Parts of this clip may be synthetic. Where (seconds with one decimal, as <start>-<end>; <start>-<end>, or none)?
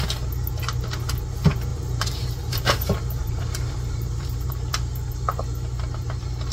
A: 1.7-4.5